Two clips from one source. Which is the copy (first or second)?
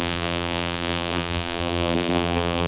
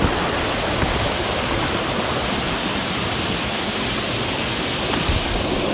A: first